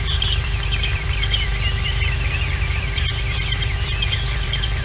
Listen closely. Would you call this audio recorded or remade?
remade